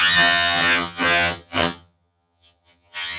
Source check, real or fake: fake